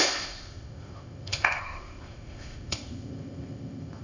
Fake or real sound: fake